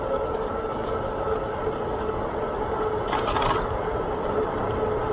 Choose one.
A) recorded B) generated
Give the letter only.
A